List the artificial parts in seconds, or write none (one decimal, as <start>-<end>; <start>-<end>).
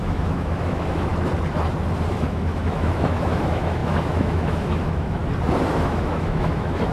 0.0-1.1; 2.1-5.2; 5.7-6.9